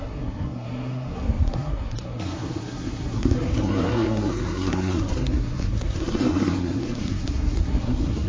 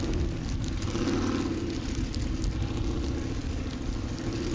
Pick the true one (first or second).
second